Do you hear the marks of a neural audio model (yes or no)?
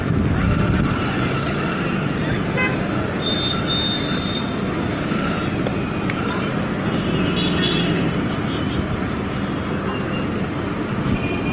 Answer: no